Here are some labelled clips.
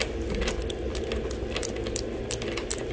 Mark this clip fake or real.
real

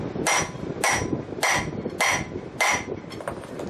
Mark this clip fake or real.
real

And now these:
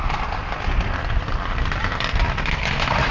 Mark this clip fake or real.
real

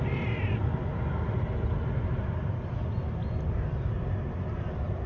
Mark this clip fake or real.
real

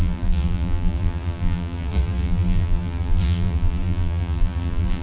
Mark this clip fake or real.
fake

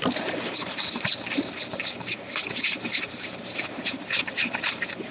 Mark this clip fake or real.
fake